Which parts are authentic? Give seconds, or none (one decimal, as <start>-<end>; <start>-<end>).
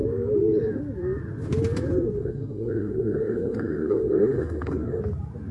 0.0-2.2; 5.0-5.5